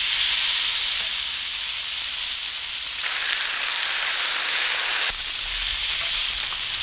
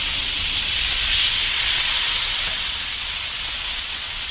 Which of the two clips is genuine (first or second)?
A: first